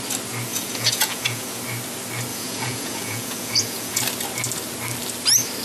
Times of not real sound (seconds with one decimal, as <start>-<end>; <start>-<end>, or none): 0.5-1.6; 2.3-4.0